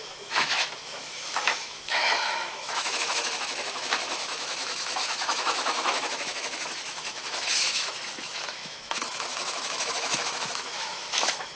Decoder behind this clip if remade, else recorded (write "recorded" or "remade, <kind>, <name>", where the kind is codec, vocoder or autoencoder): remade, autoencoder, DAC-VAE